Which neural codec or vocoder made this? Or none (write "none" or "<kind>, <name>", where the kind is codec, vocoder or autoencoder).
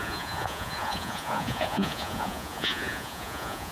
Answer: vocoder, Vocos